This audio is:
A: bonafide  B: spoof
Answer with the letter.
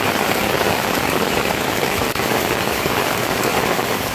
B